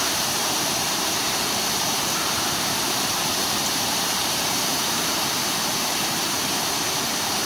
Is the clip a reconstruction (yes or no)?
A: yes